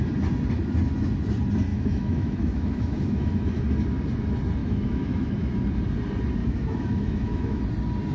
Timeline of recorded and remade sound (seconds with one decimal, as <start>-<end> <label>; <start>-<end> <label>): 0.0-1.7 recorded; 1.7-3.6 remade; 3.6-4.6 recorded; 4.6-5.5 remade; 5.5-6.4 recorded; 6.4-7.6 remade; 7.6-8.1 recorded